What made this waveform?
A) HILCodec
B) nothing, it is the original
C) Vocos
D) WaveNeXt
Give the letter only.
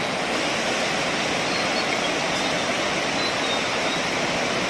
B